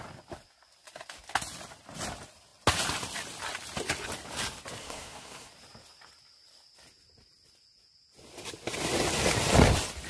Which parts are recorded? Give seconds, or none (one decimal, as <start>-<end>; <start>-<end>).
0.0-4.8; 5.5-10.1